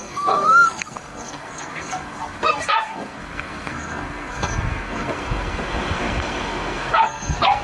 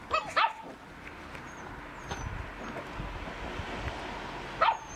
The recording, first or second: second